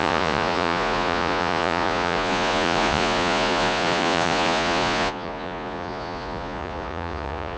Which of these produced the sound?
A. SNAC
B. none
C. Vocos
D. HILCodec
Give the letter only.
C